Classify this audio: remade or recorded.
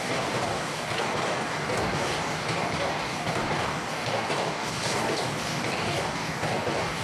remade